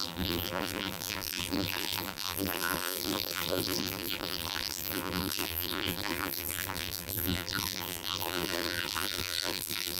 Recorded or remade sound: remade